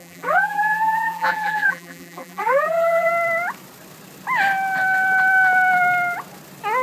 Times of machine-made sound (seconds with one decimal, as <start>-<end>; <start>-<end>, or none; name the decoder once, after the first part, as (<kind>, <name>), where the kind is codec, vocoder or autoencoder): 0.0-3.1 (vocoder, BigVGAN v2)